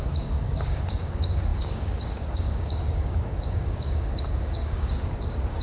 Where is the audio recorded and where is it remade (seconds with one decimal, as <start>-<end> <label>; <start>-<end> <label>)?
0.0-5.6 remade